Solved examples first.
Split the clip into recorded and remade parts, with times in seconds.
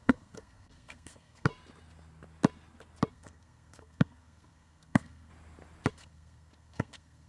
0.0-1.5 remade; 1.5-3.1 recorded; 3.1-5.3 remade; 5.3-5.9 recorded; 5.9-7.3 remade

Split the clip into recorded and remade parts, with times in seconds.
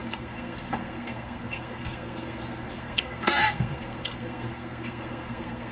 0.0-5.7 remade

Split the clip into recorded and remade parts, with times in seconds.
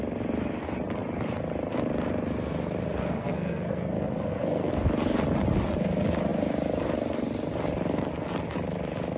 0.0-3.0 recorded; 3.0-4.7 remade; 4.7-9.2 recorded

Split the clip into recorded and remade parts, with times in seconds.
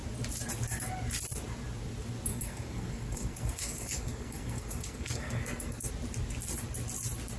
0.0-2.3 recorded; 2.3-5.9 remade; 5.9-7.4 recorded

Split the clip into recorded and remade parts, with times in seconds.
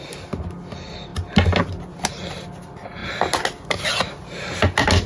0.0-5.1 recorded